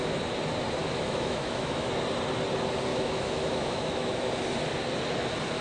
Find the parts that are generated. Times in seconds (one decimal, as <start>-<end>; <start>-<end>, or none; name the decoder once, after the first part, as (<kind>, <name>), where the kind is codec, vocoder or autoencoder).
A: 0.8-1.9 (autoencoder, DAC-VAE); 2.9-4.3